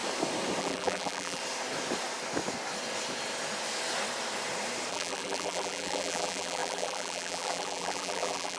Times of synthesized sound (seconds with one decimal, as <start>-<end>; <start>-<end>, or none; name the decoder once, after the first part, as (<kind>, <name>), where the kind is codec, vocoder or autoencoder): 0.6-1.4 (vocoder, BigVGAN v2); 4.9-8.6